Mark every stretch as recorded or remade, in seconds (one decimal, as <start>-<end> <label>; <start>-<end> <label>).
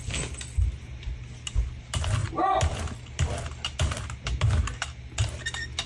0.0-5.9 recorded